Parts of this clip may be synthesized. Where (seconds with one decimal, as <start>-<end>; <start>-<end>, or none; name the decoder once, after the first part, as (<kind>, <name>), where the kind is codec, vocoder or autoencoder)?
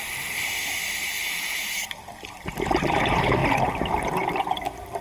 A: 0.0-3.4 (vocoder, BigVGAN v2); 4.5-5.0